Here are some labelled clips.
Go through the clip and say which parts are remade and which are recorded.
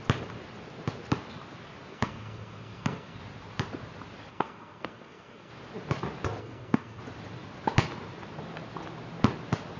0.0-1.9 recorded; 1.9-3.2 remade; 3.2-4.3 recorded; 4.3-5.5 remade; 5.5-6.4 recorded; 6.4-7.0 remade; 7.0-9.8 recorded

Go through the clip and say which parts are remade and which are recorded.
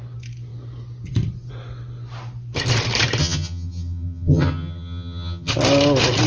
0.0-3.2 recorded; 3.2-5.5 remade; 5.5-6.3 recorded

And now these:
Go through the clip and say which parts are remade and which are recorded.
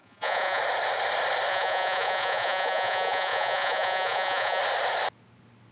0.0-0.6 remade; 0.6-1.5 recorded; 1.5-4.6 remade; 4.6-5.7 recorded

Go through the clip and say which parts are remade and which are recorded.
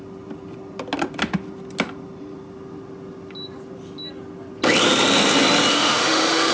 0.0-5.7 recorded; 5.7-6.5 remade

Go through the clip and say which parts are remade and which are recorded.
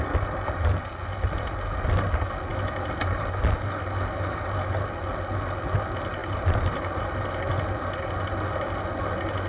0.0-9.5 recorded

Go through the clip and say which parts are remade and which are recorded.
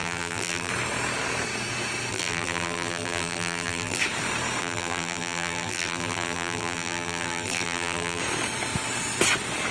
0.0-0.7 remade; 0.7-2.1 recorded; 2.1-4.0 remade; 4.0-4.6 recorded; 4.6-8.2 remade; 8.2-9.7 recorded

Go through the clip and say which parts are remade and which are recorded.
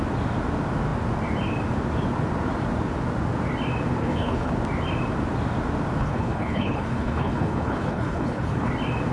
0.0-4.0 recorded; 4.0-4.5 remade; 4.5-6.0 recorded; 6.0-8.7 remade; 8.7-9.1 recorded